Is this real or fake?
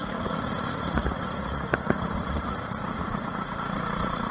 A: fake